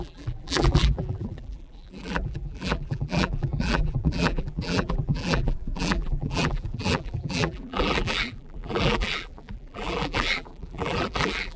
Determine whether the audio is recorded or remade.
remade